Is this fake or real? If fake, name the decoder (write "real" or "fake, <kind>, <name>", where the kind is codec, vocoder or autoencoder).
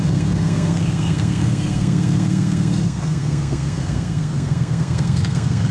fake, codec, SNAC